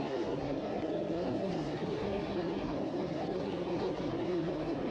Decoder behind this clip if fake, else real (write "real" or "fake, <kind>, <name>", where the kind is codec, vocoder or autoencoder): fake, codec, SNAC